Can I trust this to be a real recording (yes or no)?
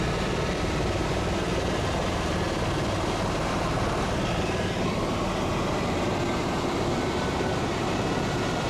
no